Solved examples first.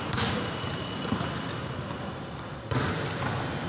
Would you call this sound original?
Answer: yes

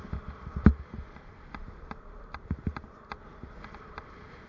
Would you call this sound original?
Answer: yes